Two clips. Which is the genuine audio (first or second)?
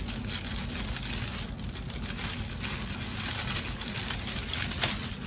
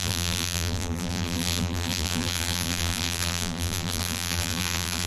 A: first